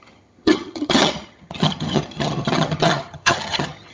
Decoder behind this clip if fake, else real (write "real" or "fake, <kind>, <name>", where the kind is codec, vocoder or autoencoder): fake, vocoder, HiFi-GAN